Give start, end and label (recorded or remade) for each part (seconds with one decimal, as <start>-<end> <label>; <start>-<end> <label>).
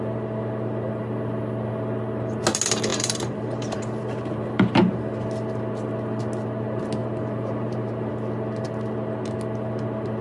0.0-2.9 recorded; 2.9-5.0 remade; 5.0-7.0 recorded; 7.0-8.1 remade; 8.1-10.2 recorded